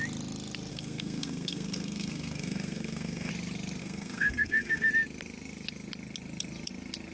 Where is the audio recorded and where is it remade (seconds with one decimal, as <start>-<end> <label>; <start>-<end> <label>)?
0.0-0.7 recorded; 0.7-3.3 remade; 3.3-3.8 recorded; 3.8-4.9 remade; 4.9-7.1 recorded